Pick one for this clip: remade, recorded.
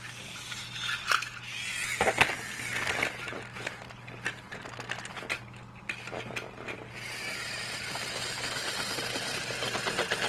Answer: recorded